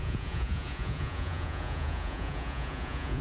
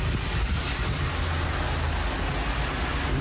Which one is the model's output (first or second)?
first